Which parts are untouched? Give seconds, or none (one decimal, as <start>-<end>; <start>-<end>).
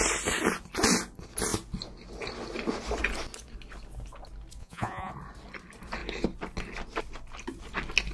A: 0.0-4.6; 5.1-8.1